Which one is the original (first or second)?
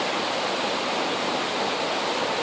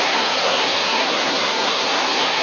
first